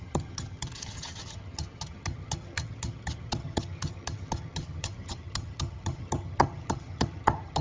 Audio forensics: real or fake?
fake